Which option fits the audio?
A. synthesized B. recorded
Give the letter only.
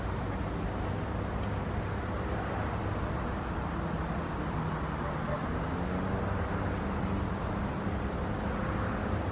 B